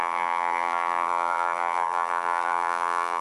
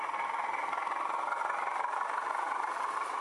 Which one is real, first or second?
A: second